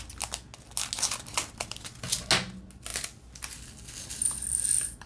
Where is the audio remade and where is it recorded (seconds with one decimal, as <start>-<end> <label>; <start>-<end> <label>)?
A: 0.0-5.1 recorded